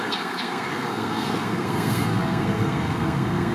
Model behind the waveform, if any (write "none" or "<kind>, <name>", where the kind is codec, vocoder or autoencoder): codec, SNAC